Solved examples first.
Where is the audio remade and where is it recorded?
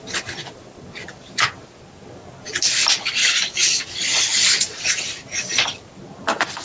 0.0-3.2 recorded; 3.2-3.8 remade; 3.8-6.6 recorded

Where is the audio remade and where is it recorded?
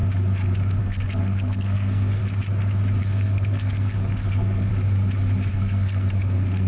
0.0-0.8 recorded; 0.8-2.2 remade; 2.2-3.0 recorded; 3.0-4.7 remade; 4.7-5.5 recorded; 5.5-6.7 remade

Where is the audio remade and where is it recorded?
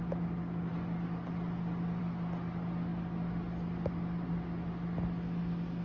0.0-5.8 recorded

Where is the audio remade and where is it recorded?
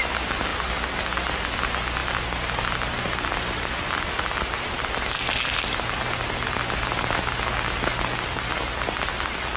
0.0-9.6 recorded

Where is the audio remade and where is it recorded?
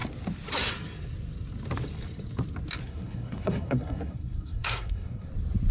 0.0-2.8 recorded; 2.8-5.3 remade; 5.3-5.7 recorded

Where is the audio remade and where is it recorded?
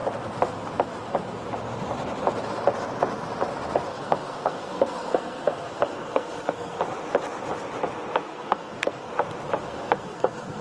0.0-3.9 recorded; 3.9-6.8 remade; 6.8-8.2 recorded; 8.2-9.1 remade; 9.1-9.6 recorded; 9.6-10.6 remade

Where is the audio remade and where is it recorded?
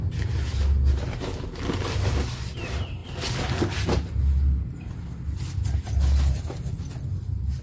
0.0-7.6 recorded